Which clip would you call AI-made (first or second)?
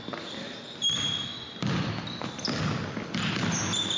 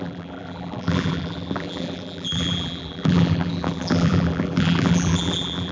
second